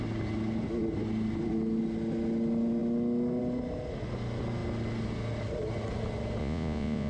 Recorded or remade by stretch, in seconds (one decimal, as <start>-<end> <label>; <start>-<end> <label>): 0.0-6.4 recorded; 6.4-7.1 remade